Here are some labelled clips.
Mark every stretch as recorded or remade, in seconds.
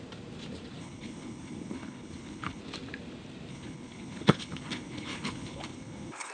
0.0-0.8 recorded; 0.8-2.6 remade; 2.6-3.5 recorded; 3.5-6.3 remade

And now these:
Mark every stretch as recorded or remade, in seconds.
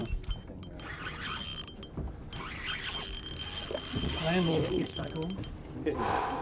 0.0-4.5 recorded; 4.5-5.1 remade; 5.1-6.4 recorded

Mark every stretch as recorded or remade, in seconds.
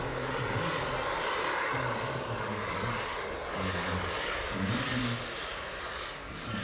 0.0-5.0 remade; 5.0-5.9 recorded; 5.9-6.6 remade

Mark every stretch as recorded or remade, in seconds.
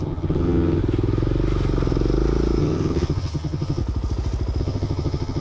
0.0-0.8 remade; 0.8-2.6 recorded; 2.6-3.8 remade; 3.8-4.6 recorded; 4.6-5.4 remade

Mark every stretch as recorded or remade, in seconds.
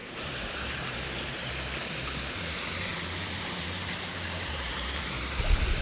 0.0-1.5 remade; 1.5-2.9 recorded; 2.9-5.8 remade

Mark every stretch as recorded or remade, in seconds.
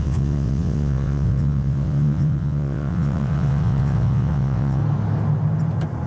0.0-4.8 remade; 4.8-6.1 recorded